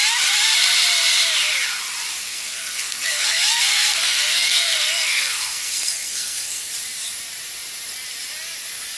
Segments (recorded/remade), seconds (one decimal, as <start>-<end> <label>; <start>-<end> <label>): 0.0-2.2 recorded; 2.2-6.7 remade; 6.7-9.0 recorded